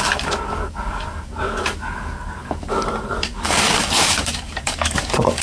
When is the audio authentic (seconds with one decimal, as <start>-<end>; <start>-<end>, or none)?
none